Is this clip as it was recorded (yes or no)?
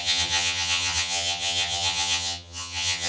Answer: no